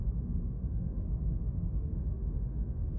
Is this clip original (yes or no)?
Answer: no